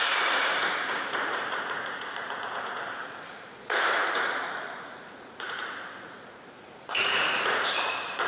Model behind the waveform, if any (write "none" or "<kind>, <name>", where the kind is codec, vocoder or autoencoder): vocoder, Vocos